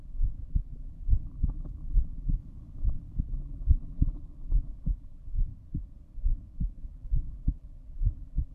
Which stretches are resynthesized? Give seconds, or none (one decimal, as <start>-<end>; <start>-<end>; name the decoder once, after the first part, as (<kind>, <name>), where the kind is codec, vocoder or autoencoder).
0.0-2.4 (vocoder, BigVGAN v2); 3.2-5.5; 6.8-8.5